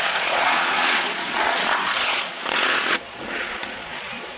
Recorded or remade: remade